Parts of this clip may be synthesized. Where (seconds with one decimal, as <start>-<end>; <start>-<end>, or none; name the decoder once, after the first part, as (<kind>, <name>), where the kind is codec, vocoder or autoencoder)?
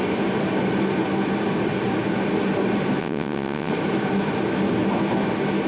3.0-3.7 (vocoder, WaveNeXt)